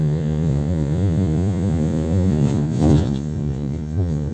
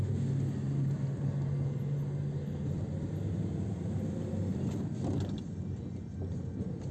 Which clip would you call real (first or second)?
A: second